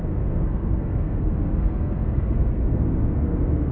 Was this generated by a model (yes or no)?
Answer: yes